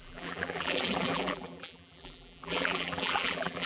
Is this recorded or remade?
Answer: remade